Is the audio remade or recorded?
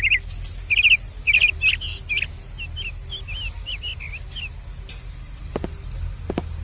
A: recorded